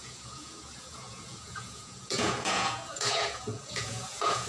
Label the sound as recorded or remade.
remade